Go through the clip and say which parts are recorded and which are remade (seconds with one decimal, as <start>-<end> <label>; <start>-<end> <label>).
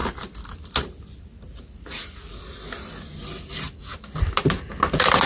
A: 0.0-5.3 recorded